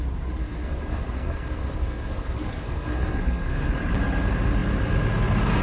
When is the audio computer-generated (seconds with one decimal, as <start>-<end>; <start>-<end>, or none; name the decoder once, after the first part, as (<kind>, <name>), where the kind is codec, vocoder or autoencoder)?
0.4-3.8 (codec, SNAC)